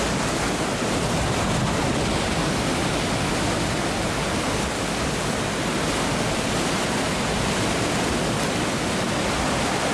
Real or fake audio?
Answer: real